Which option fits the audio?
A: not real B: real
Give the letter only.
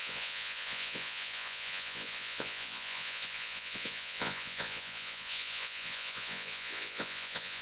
A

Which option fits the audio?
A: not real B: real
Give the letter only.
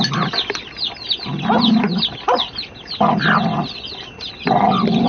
B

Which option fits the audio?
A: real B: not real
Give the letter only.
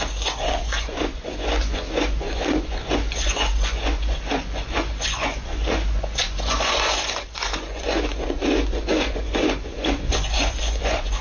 B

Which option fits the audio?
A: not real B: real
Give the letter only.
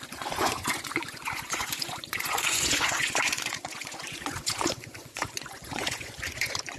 A